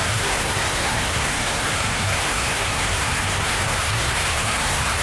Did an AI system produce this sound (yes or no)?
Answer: yes